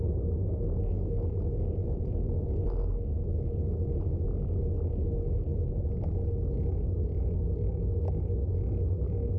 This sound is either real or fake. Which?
real